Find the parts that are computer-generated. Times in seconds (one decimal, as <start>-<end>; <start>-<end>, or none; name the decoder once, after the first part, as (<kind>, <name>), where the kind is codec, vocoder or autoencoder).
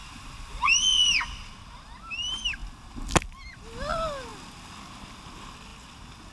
none